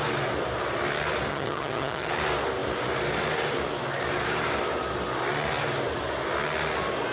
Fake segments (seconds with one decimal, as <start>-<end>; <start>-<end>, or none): 1.3-2.1